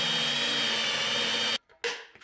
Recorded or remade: recorded